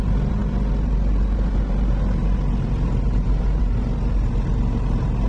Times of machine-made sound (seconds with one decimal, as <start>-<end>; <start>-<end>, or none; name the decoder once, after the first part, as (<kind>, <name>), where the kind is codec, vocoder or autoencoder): none